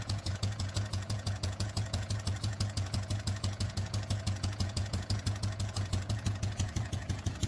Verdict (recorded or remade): remade